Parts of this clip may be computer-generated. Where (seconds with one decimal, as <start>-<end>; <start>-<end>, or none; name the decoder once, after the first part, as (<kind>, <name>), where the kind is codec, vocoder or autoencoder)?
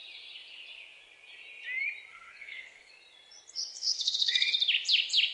2.1-2.9 (codec, SNAC); 3.7-4.5